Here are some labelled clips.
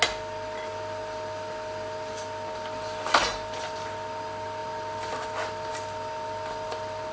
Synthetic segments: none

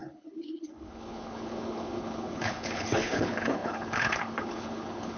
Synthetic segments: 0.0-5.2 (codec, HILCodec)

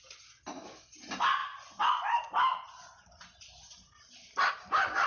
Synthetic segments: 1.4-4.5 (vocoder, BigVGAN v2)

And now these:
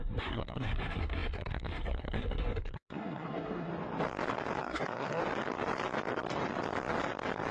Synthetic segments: 0.0-3.7 (codec, SNAC); 4.6-5.2

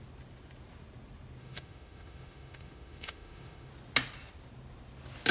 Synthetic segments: 1.4-3.7 (autoencoder, DAC-VAE)

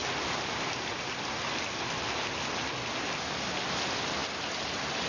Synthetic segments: none

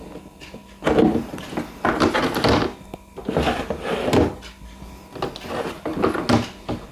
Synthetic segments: none